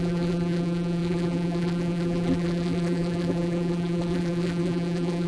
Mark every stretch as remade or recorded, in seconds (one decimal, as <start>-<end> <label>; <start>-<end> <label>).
0.0-5.3 remade